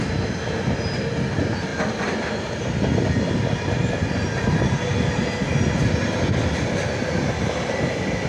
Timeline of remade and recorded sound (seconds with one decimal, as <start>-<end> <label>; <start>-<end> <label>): 0.0-8.3 recorded